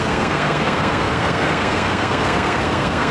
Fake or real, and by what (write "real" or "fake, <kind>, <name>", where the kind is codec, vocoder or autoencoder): fake, codec, SNAC